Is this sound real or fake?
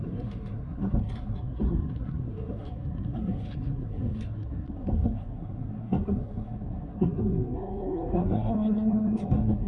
fake